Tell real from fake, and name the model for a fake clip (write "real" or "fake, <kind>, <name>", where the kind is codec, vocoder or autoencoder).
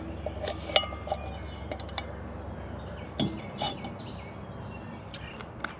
real